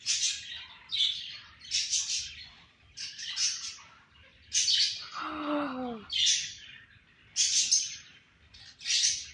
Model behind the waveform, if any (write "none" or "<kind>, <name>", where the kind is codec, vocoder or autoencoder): none